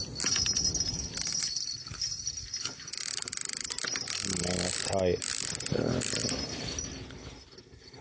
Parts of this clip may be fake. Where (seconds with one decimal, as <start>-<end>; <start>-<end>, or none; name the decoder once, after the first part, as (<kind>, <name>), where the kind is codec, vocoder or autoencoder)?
none